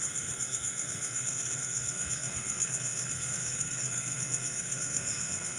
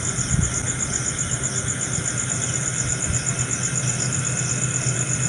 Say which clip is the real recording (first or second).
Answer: second